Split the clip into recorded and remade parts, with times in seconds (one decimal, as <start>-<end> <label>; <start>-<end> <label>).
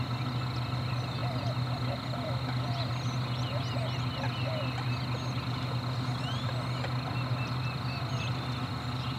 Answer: 0.0-9.2 recorded